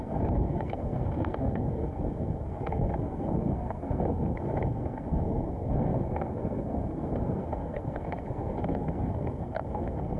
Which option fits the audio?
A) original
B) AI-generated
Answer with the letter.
B